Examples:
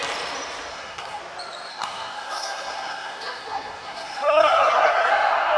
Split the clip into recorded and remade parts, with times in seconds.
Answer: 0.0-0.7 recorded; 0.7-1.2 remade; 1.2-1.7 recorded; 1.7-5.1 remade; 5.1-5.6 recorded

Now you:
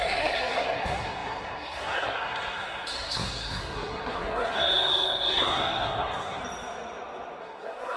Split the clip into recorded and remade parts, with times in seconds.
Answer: 0.0-6.4 remade; 6.4-7.4 recorded; 7.4-8.0 remade

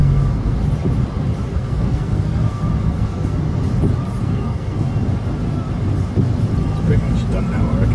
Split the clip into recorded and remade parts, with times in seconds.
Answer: 0.0-0.6 remade; 0.6-1.5 recorded; 1.5-3.4 remade; 3.4-4.2 recorded; 4.2-4.9 remade; 4.9-7.9 recorded

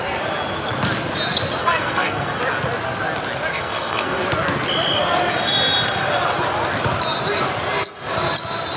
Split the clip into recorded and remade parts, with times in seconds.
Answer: 0.0-1.6 recorded; 1.6-2.4 remade; 2.4-3.5 recorded; 3.5-4.2 remade; 4.2-8.8 recorded

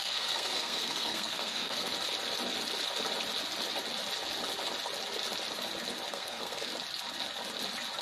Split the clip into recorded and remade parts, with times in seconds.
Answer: 0.0-1.9 remade; 1.9-6.1 recorded; 6.1-6.7 remade; 6.7-8.0 recorded

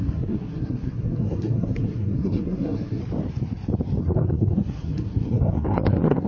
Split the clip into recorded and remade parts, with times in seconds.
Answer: 0.0-3.0 remade; 3.0-4.0 recorded; 4.0-6.3 remade